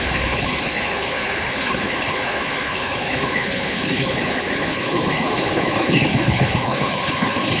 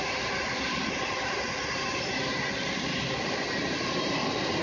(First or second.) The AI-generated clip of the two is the first